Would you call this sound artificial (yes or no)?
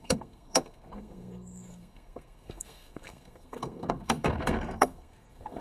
yes